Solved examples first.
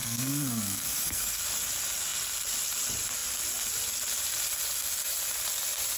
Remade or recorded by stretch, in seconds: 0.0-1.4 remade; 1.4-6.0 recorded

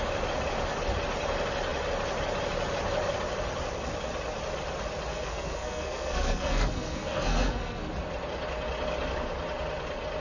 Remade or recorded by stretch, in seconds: 0.0-5.1 recorded; 5.1-7.9 remade; 7.9-10.2 recorded

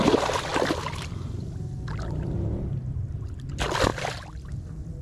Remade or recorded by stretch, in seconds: 0.0-5.0 recorded

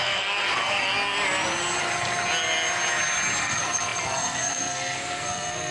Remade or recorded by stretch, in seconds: 0.0-0.9 remade; 0.9-3.4 recorded; 3.4-5.7 remade

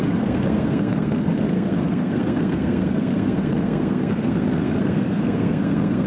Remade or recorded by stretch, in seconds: 0.0-6.1 remade